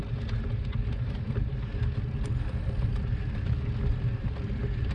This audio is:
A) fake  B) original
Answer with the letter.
B